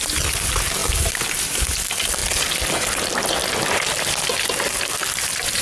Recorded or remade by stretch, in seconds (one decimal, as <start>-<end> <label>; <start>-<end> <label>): 0.0-5.6 recorded